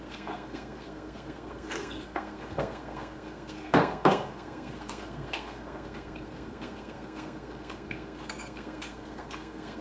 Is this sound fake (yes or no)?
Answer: yes